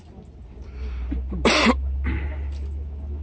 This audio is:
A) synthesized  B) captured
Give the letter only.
B